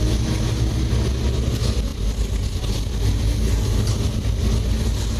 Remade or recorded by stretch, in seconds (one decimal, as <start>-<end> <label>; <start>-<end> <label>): 0.0-5.2 recorded